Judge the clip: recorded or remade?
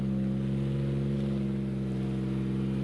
recorded